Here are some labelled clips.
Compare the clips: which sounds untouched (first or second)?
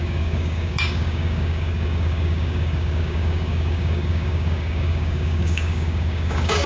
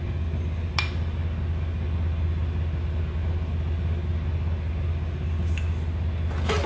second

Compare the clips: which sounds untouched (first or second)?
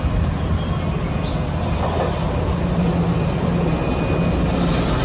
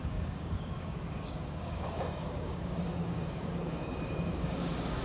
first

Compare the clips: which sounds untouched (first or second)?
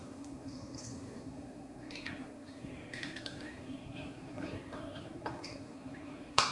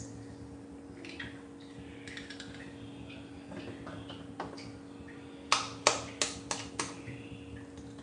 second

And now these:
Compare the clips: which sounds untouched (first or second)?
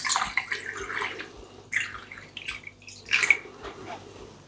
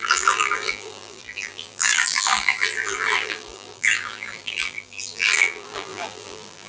first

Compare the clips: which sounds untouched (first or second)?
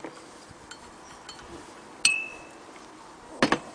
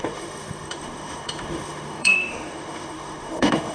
first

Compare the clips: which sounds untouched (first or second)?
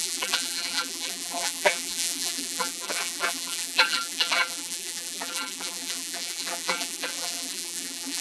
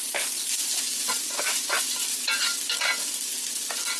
second